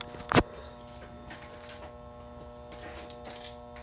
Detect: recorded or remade recorded